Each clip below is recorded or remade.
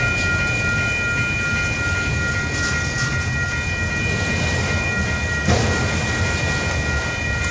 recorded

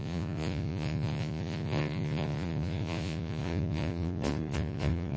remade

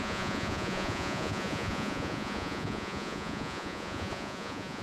remade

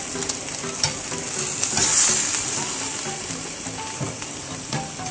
recorded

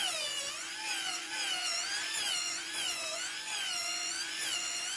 remade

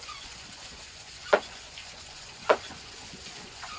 remade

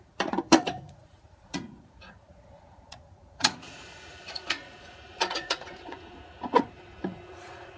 remade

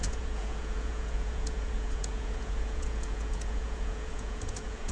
remade